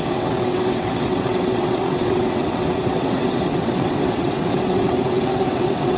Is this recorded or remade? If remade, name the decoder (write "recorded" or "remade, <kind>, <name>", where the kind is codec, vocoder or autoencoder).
remade, vocoder, WaveNeXt